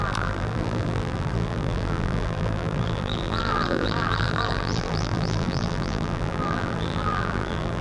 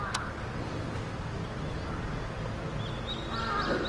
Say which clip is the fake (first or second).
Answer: first